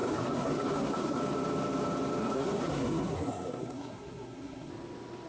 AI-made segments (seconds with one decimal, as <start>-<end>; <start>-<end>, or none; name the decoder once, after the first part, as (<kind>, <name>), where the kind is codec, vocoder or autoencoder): 0.0-1.2 (codec, SNAC); 2.2-4.7

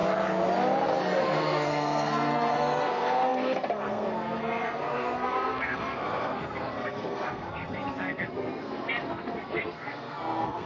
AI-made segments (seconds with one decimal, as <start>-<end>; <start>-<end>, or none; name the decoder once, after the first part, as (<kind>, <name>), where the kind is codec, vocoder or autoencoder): 1.2-10.7 (codec, SNAC)

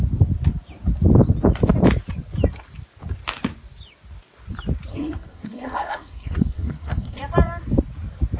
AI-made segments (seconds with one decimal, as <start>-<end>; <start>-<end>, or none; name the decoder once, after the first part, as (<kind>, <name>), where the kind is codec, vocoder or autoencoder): 4.9-7.2 (codec, SNAC)

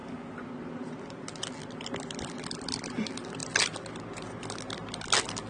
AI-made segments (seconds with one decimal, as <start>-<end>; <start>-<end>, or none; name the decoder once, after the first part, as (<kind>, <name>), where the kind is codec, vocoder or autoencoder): none

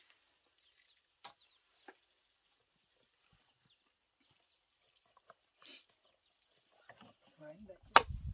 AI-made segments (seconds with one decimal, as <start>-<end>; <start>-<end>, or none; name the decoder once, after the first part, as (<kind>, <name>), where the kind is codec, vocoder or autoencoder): none

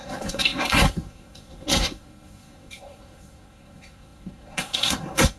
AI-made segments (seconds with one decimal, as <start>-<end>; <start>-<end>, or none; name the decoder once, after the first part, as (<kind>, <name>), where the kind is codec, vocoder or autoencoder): 0.0-5.4 (codec, SNAC)

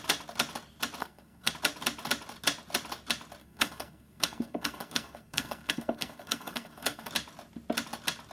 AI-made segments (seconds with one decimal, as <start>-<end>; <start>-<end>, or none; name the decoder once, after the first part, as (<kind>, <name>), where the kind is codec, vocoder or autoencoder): 1.0-1.5 (codec, SNAC); 3.4-7.1

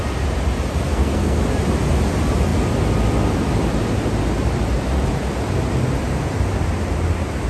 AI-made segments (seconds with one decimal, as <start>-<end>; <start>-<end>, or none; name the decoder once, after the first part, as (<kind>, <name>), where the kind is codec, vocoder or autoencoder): 0.9-1.4 (codec, SNAC)